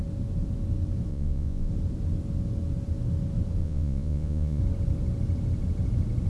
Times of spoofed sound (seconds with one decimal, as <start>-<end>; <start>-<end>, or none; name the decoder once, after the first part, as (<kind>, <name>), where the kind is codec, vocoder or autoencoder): 1.1-1.7 (vocoder, Vocos); 3.6-4.6